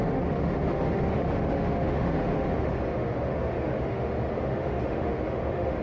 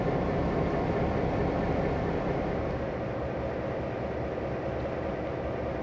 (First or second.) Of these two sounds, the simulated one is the first